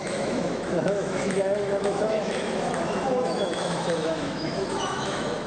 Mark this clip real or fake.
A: fake